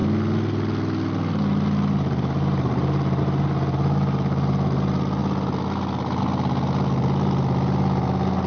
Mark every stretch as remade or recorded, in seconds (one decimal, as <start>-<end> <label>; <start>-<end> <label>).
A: 0.0-8.5 recorded